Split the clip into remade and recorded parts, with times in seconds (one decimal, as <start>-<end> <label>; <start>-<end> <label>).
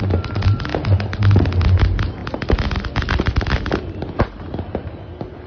0.0-5.5 recorded